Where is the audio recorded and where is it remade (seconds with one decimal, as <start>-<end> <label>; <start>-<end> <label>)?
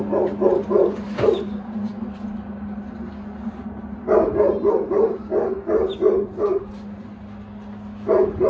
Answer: 0.0-8.5 recorded